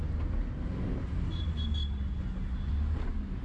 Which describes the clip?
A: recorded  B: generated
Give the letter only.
A